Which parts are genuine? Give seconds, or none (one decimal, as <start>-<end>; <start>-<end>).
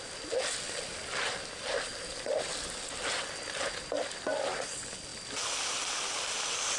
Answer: 0.0-6.8